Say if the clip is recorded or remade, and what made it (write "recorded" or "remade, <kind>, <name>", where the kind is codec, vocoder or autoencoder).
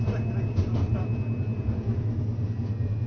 recorded